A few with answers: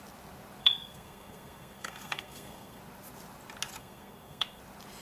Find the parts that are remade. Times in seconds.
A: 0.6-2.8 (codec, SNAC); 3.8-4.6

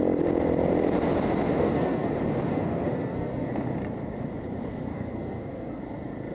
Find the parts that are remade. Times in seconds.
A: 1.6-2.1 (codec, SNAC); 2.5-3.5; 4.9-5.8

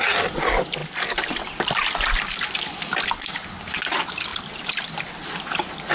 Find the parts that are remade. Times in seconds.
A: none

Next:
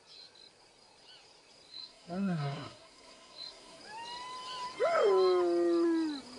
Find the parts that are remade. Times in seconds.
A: 1.7-3.8 (codec, SNAC)

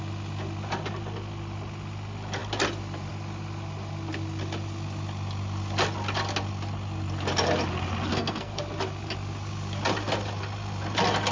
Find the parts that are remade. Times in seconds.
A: 8.1-8.6 (codec, SNAC)